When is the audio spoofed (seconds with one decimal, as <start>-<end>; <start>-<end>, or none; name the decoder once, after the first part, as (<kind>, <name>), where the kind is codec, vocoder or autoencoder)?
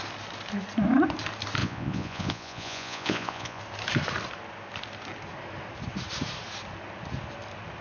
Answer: 1.6-3.6 (vocoder, Vocos)